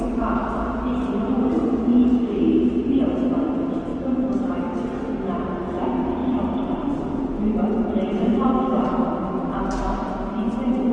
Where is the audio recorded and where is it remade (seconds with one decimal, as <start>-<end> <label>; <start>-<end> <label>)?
0.0-6.2 recorded; 6.2-9.1 remade; 9.1-10.9 recorded